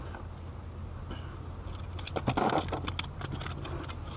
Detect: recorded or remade recorded